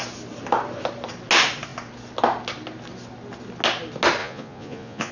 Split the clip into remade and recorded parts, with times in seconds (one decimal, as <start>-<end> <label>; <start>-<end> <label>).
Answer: 0.0-4.2 recorded; 4.2-5.1 remade